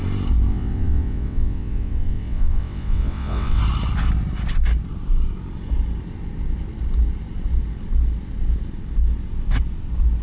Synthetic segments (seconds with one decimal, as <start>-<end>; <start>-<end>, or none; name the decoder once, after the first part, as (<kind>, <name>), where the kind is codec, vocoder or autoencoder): 0.5-3.6 (vocoder, WaveNeXt)